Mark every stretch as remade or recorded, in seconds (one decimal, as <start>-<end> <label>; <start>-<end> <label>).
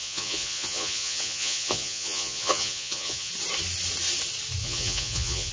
0.0-3.3 remade; 3.3-4.6 recorded; 4.6-5.5 remade